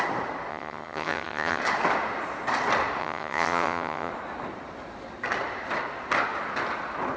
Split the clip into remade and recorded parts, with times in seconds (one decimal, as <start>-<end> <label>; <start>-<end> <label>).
0.0-0.5 recorded; 0.5-1.6 remade; 1.6-3.0 recorded; 3.0-4.1 remade; 4.1-7.2 recorded